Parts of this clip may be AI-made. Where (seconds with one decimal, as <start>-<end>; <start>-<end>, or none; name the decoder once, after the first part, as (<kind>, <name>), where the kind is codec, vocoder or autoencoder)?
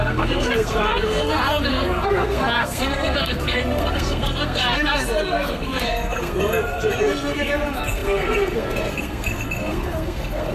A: 0.0-10.5 (codec, SNAC)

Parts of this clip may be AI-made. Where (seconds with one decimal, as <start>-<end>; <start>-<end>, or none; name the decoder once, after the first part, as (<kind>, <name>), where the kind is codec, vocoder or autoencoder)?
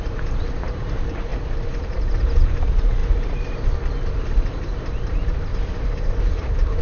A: 0.0-1.3 (vocoder, BigVGAN v2); 1.8-3.0; 4.6-5.5; 6.2-6.8